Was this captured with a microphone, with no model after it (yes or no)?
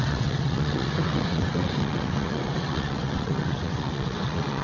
no